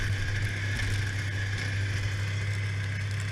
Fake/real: real